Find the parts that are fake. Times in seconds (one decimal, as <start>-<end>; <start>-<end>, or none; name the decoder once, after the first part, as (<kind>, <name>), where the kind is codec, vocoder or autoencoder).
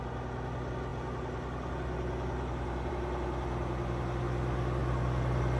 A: none